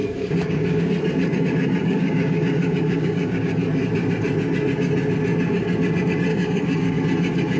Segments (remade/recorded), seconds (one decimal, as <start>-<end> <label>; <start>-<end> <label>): 0.0-0.8 remade; 0.8-1.8 recorded; 1.8-3.4 remade; 3.4-6.3 recorded; 6.3-7.0 remade; 7.0-7.6 recorded